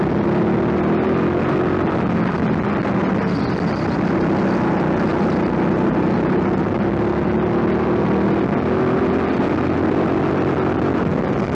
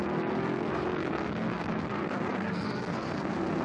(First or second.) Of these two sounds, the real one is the first